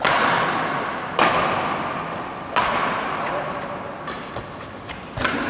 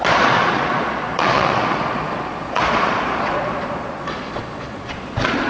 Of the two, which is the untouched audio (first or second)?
first